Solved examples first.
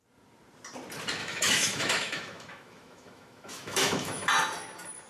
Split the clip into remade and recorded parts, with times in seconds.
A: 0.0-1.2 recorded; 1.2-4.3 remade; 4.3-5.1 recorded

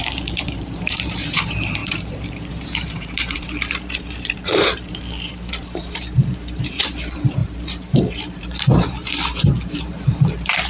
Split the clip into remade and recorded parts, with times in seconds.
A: 0.0-10.7 remade

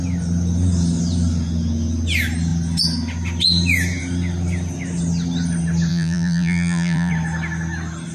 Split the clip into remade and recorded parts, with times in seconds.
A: 0.0-5.9 recorded; 5.9-7.1 remade; 7.1-8.1 recorded

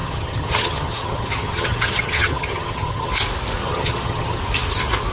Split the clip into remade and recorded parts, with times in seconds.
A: 0.0-3.1 remade; 3.1-3.6 recorded; 3.6-4.4 remade; 4.4-5.1 recorded

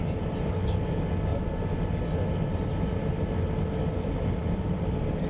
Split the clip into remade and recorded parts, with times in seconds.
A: 0.0-5.3 recorded